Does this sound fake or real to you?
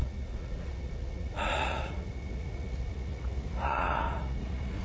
fake